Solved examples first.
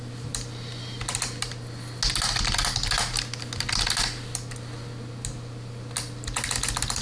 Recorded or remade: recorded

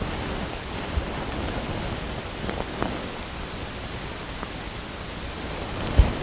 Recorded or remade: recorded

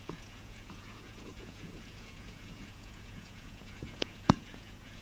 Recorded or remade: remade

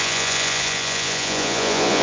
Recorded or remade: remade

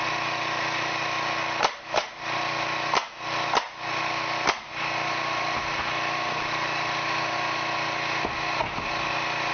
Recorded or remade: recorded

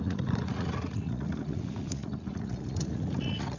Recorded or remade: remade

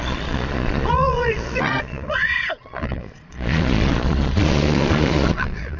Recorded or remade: remade